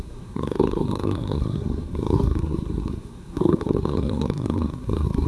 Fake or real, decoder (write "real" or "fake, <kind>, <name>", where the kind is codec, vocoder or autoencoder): fake, codec, SNAC